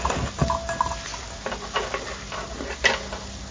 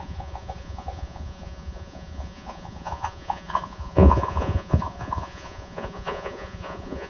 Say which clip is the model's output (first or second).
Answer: second